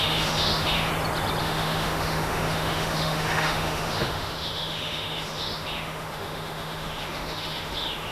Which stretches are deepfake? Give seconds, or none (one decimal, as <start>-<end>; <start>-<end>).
0.0-0.9; 1.4-8.1